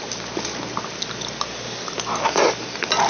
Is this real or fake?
real